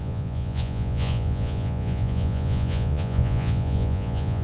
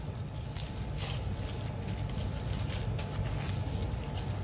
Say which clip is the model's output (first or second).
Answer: first